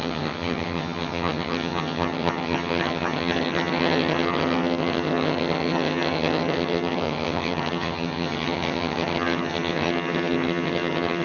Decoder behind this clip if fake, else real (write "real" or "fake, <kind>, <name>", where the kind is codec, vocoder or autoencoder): fake, vocoder, HiFi-GAN